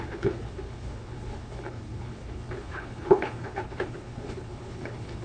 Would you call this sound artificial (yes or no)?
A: yes